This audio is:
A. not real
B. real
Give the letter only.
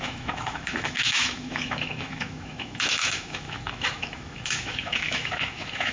A